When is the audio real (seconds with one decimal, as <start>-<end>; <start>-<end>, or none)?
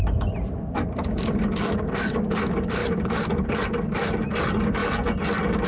0.0-5.7